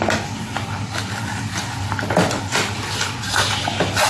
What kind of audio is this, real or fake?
real